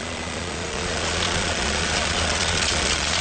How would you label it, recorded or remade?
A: remade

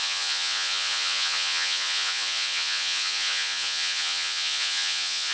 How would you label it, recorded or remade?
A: remade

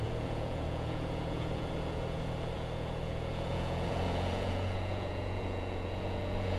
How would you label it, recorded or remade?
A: remade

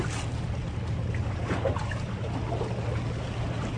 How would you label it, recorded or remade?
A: recorded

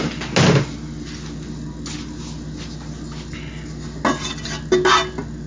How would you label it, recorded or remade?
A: recorded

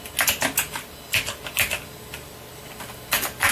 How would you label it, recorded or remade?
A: recorded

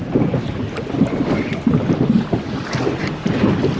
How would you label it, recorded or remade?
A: recorded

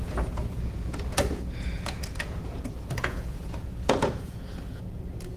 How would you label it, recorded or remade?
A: remade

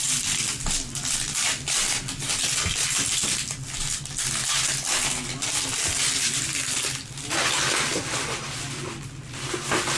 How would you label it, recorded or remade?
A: recorded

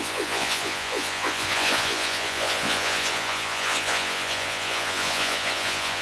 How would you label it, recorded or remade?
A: remade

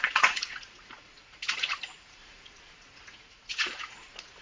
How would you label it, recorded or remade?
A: remade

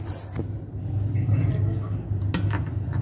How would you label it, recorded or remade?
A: recorded